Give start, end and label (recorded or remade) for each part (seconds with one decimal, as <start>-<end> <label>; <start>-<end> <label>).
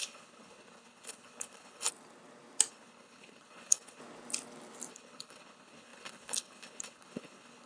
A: 0.0-1.9 remade; 1.9-2.7 recorded; 2.7-4.0 remade; 4.0-4.9 recorded; 4.9-7.7 remade